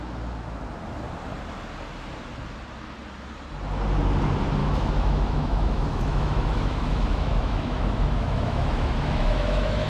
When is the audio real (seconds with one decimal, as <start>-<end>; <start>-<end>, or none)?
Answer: 0.0-4.6